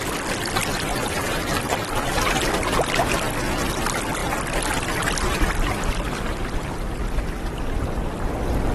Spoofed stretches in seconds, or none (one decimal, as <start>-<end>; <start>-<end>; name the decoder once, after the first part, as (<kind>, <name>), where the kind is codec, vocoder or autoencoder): 0.9-1.7 (vocoder, BigVGAN v2)